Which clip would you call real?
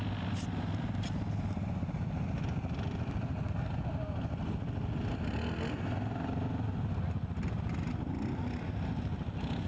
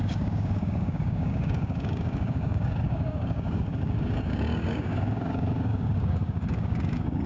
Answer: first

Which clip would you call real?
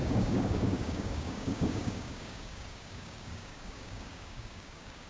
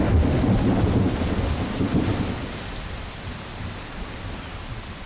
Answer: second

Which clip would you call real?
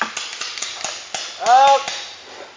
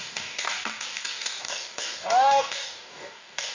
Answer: first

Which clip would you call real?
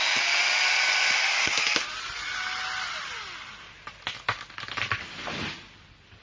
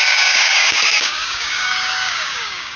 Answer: first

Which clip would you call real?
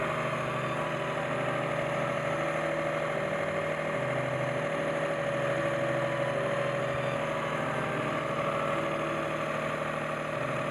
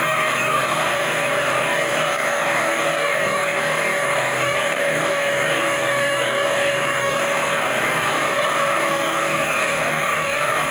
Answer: first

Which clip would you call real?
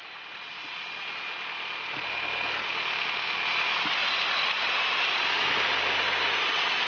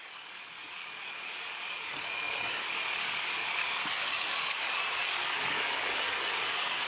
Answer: first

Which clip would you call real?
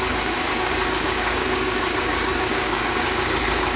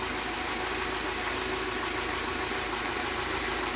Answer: second